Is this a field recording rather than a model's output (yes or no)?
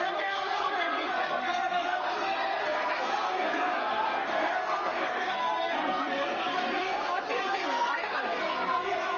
no